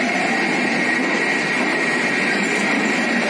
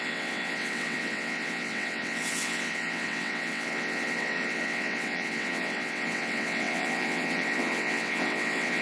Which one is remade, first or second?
second